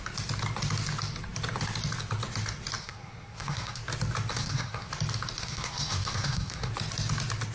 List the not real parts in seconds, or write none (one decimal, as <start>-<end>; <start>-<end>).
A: 2.8-3.8; 4.3-4.9; 5.4-6.7